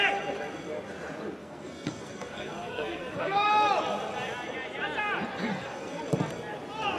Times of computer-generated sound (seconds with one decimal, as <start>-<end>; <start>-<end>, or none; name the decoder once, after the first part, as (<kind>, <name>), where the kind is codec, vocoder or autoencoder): 1.4-3.5 (codec, SNAC); 5.5-6.0